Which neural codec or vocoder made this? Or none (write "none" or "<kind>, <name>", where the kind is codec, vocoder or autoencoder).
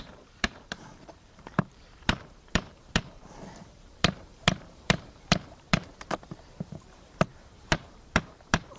vocoder, BigVGAN v2